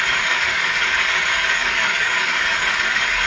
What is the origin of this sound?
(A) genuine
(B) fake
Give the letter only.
B